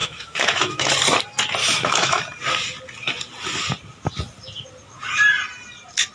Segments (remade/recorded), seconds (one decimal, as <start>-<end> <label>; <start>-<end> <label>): 0.0-0.9 remade; 0.9-1.6 recorded; 1.6-2.2 remade; 2.2-6.1 recorded